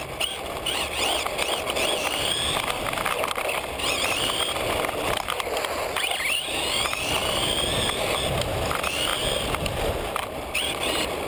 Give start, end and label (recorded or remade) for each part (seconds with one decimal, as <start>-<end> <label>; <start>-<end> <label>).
0.0-11.3 recorded